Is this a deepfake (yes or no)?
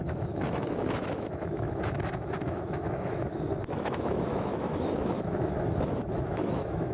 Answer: yes